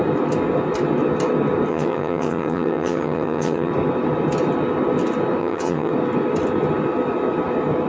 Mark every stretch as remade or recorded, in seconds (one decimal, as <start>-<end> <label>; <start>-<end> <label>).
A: 0.0-1.7 recorded; 1.7-3.7 remade; 3.7-5.4 recorded; 5.4-5.9 remade; 5.9-7.9 recorded